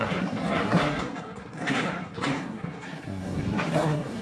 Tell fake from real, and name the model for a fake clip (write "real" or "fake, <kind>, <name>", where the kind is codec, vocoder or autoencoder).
fake, codec, SNAC